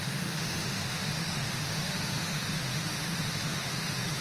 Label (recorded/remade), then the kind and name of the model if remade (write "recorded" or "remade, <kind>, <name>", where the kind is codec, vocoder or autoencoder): remade, autoencoder, DAC-VAE